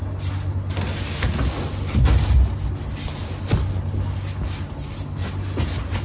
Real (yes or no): yes